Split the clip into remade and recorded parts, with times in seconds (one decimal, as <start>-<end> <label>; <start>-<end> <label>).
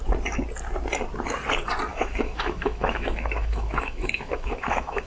0.0-1.9 recorded; 1.9-5.1 remade